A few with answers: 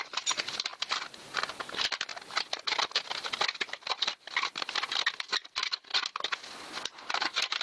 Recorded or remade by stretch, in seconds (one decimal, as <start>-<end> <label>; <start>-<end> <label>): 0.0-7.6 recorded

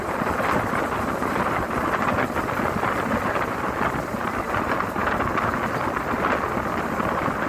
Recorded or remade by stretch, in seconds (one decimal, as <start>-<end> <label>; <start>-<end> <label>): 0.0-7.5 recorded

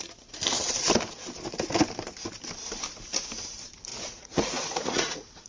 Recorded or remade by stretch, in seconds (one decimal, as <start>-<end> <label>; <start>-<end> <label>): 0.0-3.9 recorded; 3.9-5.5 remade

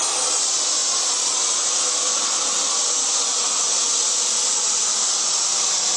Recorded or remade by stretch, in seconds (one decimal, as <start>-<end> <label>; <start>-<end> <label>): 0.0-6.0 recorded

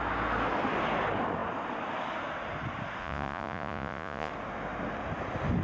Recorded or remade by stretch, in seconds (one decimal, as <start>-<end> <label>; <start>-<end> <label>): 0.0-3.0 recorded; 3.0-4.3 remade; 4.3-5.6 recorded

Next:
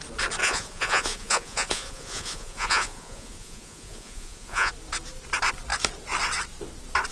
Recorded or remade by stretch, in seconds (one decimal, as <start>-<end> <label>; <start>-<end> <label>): 0.0-0.4 recorded; 0.4-4.7 remade; 4.7-7.1 recorded

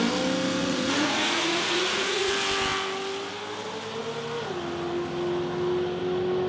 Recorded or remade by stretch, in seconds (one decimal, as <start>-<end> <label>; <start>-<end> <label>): 0.0-0.6 recorded; 0.6-2.3 remade; 2.3-6.5 recorded